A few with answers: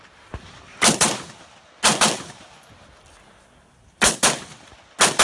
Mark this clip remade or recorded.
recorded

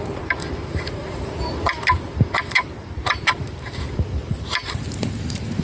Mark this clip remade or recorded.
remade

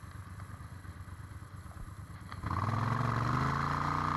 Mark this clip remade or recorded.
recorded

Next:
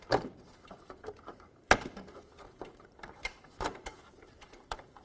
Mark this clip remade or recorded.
remade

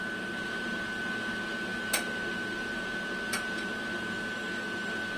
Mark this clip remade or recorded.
recorded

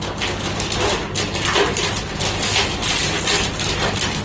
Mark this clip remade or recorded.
recorded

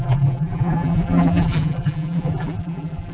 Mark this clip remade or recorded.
remade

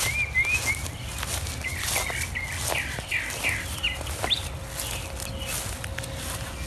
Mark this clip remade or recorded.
recorded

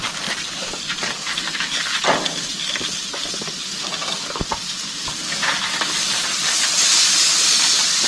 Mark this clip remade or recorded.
remade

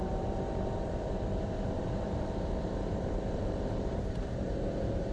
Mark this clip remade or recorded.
remade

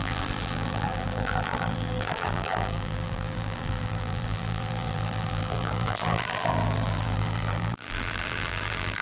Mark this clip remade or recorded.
remade